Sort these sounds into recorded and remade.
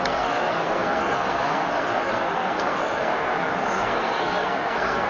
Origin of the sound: remade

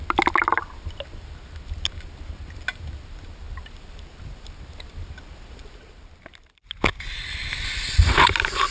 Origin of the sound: recorded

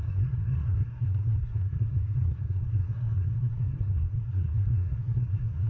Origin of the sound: remade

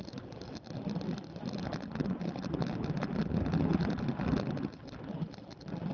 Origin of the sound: recorded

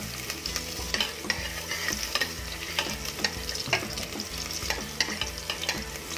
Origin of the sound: recorded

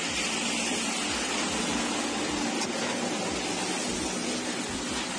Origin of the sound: recorded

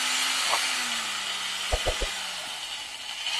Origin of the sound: recorded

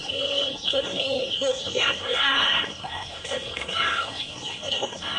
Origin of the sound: remade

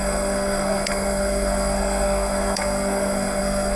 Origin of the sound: remade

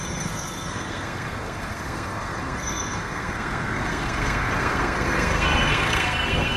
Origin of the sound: remade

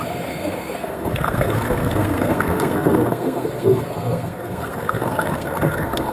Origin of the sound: remade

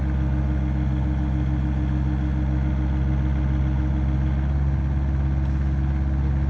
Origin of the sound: recorded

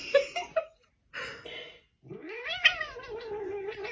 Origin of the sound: recorded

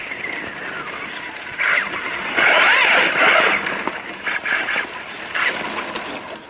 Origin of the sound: recorded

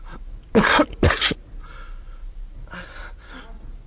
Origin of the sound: recorded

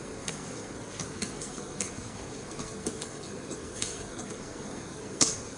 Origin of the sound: remade